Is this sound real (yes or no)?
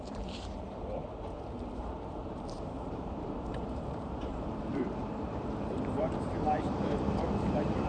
no